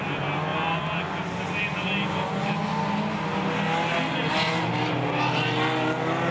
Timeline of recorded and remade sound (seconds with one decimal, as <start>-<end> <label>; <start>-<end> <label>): 0.0-6.3 recorded